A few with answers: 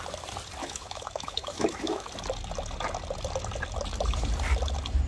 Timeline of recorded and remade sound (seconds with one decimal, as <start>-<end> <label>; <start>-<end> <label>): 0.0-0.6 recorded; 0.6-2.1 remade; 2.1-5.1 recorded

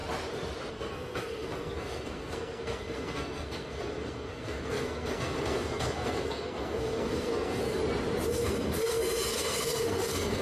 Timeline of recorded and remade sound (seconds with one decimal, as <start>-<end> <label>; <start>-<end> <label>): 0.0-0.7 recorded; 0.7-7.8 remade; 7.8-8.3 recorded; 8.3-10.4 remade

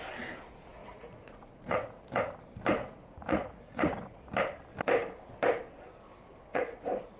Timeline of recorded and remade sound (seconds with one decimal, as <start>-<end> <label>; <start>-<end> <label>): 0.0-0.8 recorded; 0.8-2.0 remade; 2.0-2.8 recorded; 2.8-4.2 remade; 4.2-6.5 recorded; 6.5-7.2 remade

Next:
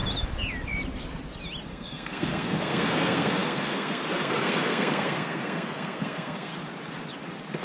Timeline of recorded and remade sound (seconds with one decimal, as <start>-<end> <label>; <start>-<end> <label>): 0.0-1.7 recorded; 1.7-6.5 remade; 6.5-7.6 recorded

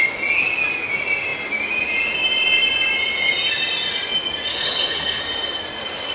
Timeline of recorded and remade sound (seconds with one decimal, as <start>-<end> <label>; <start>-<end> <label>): 0.0-4.5 recorded; 4.5-5.2 remade; 5.2-6.1 recorded

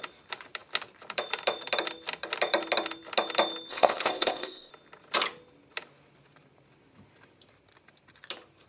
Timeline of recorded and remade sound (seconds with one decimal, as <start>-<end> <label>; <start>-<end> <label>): 0.0-3.7 recorded; 3.7-4.7 remade; 4.7-8.7 recorded